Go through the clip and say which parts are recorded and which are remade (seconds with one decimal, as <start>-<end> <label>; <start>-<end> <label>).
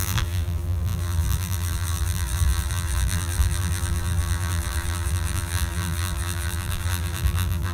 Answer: 0.0-7.7 remade